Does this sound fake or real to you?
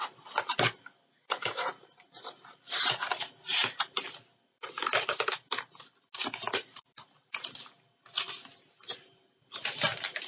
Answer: real